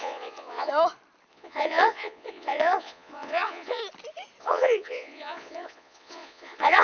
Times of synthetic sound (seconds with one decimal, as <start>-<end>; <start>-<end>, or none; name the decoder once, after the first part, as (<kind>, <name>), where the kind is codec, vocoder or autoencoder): 0.0-0.7 (vocoder, Vocos); 1.3-3.8; 4.4-6.8